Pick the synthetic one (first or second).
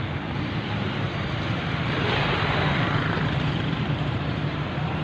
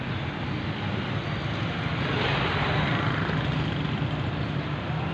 first